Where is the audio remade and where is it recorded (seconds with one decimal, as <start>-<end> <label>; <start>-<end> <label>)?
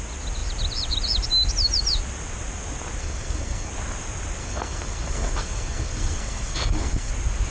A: 0.0-3.0 recorded; 3.0-3.7 remade; 3.7-4.4 recorded; 4.4-7.1 remade; 7.1-7.5 recorded